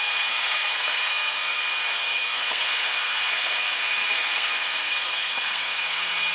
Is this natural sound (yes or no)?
no